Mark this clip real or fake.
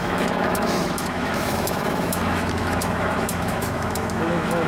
fake